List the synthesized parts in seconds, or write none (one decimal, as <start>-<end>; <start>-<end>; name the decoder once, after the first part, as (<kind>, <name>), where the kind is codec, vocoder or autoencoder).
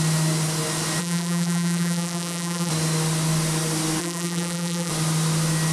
1.0-2.7 (vocoder, BigVGAN v2); 4.0-4.9